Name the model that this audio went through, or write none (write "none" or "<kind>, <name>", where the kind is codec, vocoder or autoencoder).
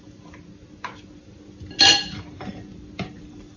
none